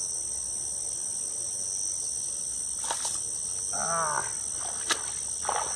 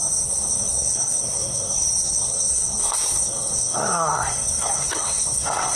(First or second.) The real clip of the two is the first